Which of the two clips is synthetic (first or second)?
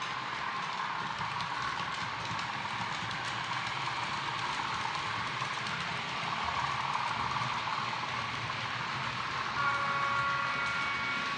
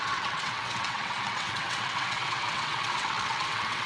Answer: second